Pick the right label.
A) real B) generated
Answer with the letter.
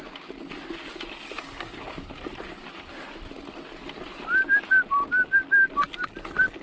A